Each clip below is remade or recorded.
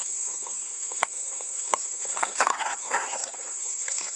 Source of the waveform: remade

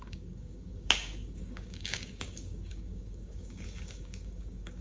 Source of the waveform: remade